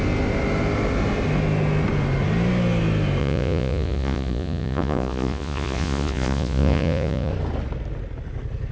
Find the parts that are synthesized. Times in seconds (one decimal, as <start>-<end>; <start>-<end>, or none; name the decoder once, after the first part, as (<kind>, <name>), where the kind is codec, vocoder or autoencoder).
3.2-7.3 (vocoder, Vocos)